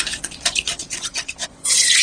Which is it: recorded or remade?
remade